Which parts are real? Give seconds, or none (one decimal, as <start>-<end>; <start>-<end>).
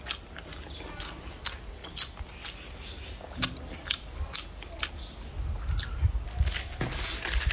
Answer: 0.0-7.5